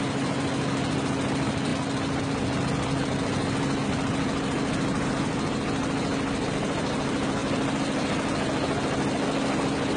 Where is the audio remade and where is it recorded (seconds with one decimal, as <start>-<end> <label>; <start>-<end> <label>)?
0.0-10.0 recorded